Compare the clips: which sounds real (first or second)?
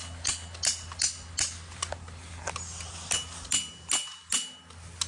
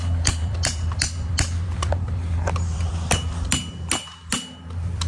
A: first